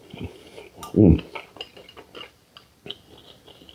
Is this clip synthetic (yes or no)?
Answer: no